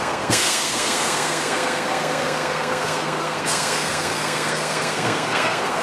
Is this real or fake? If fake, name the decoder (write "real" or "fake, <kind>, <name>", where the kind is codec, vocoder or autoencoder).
fake, codec, SNAC